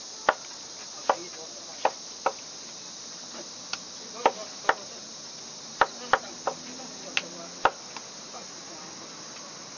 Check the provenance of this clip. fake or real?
real